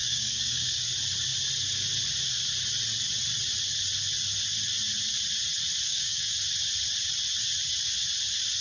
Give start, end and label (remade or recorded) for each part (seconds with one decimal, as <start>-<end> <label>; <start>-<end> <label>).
0.0-0.9 remade; 0.9-5.9 recorded; 5.9-6.4 remade; 6.4-8.6 recorded